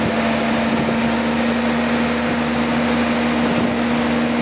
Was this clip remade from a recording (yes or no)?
no